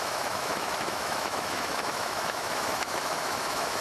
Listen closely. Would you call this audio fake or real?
fake